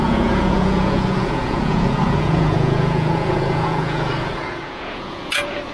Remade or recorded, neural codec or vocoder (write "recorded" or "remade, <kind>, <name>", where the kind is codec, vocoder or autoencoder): remade, vocoder, Vocos